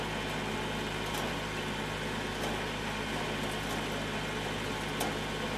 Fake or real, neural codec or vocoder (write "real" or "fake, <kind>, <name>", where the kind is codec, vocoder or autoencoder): real